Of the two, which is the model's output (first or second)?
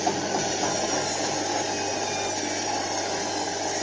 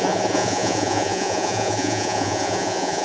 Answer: second